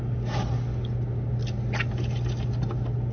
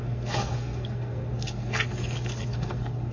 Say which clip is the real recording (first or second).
first